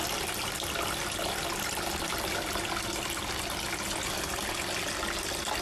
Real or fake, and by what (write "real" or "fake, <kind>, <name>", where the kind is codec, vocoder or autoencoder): real